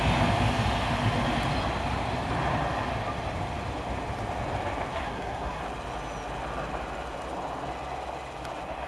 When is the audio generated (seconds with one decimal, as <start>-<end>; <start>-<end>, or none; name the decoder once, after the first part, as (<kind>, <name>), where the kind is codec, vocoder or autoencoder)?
4.9-5.6 (codec, SNAC)

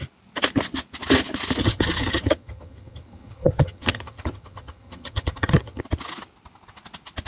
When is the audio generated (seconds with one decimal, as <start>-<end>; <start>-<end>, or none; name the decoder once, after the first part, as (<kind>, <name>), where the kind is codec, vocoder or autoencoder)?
1.6-5.8 (vocoder, HiFi-GAN)

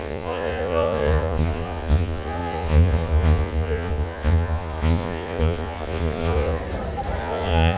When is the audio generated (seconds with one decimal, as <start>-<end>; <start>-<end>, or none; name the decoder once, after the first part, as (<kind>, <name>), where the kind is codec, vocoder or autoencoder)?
0.0-6.6 (vocoder, Vocos); 7.2-7.8

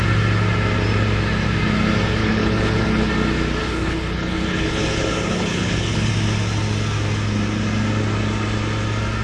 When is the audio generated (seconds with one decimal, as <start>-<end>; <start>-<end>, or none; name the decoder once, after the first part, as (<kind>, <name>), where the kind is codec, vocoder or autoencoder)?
2.2-3.1 (codec, HILCodec); 3.6-6.1

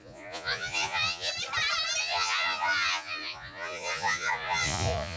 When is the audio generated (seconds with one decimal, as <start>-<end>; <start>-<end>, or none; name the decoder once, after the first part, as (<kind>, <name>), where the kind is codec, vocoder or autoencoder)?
0.0-1.3 (vocoder, Vocos); 2.0-5.2